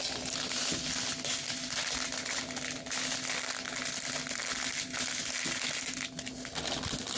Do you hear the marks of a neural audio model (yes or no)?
no